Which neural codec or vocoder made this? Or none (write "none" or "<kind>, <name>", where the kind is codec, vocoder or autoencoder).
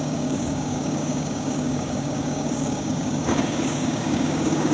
codec, DAC